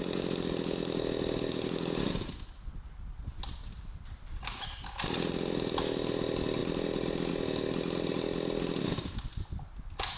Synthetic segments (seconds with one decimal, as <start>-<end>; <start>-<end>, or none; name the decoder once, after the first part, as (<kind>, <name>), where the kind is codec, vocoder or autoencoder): none